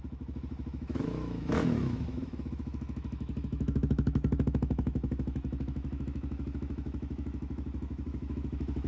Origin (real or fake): fake